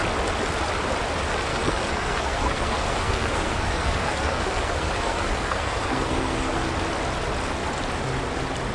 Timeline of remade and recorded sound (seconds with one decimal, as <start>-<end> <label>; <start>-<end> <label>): 0.0-1.5 recorded; 1.5-6.7 remade; 6.7-8.7 recorded